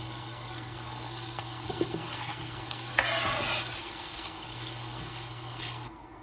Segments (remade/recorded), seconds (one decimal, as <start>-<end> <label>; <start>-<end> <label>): 0.0-2.9 remade; 2.9-3.8 recorded; 3.8-6.2 remade